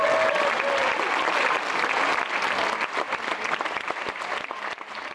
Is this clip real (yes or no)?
yes